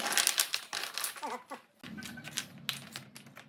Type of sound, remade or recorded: recorded